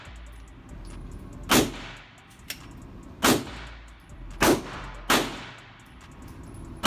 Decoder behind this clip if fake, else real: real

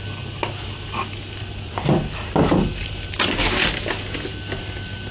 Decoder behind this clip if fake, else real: real